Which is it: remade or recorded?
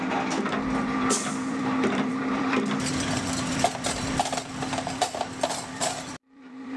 remade